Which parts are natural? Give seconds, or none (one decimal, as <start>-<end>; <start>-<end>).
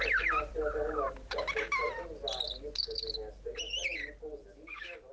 0.0-4.4